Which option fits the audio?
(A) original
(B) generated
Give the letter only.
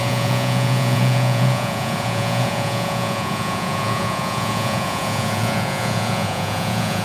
B